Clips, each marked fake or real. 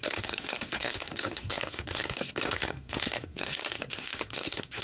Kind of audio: fake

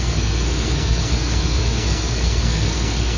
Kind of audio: fake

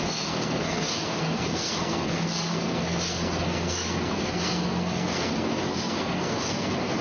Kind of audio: fake